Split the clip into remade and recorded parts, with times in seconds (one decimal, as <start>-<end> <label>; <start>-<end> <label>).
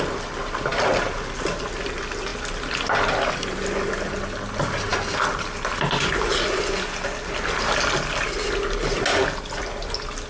0.0-10.3 recorded